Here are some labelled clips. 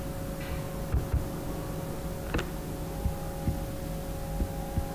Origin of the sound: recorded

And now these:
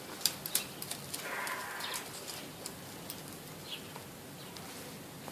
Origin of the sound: recorded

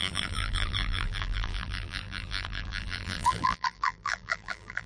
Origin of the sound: remade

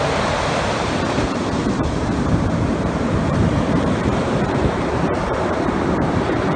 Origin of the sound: remade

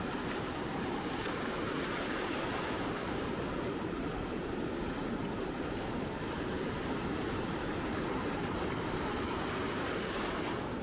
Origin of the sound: remade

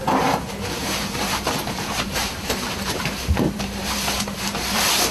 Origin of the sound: remade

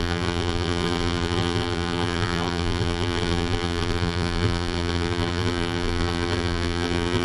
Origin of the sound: remade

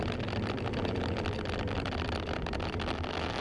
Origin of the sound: remade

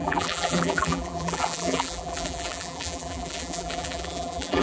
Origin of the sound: remade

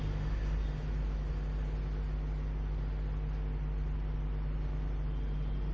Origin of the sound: recorded